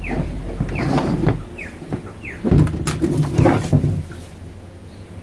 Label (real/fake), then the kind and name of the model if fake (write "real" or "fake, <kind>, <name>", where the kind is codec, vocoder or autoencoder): real